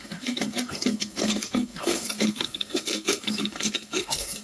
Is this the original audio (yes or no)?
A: no